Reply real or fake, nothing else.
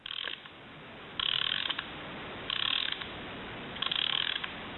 real